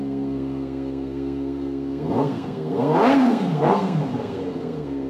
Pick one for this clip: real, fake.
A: fake